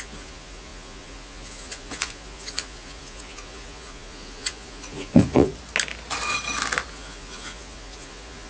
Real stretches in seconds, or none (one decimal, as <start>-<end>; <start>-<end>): 5.5-6.9